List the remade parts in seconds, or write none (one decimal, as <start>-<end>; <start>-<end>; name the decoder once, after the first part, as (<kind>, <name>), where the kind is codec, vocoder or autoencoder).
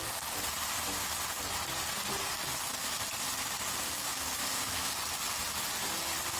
4.4-4.9 (autoencoder, DAC-VAE)